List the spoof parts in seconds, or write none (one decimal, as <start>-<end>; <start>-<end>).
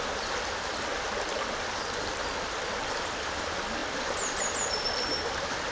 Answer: 0.0-0.9; 2.0-5.7